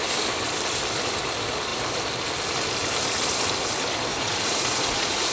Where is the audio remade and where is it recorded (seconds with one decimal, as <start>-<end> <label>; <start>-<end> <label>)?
0.0-4.1 recorded; 4.1-5.3 remade